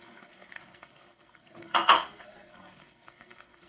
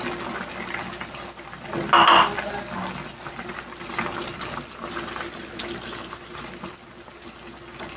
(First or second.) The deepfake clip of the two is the first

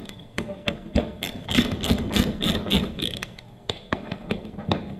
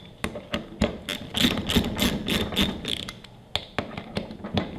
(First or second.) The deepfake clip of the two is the first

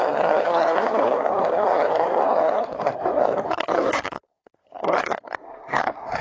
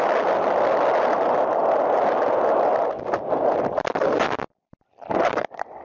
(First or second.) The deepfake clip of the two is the first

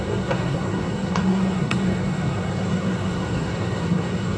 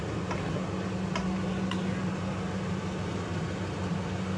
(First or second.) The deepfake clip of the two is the first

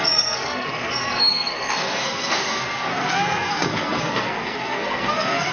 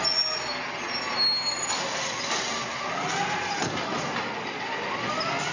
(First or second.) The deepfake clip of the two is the first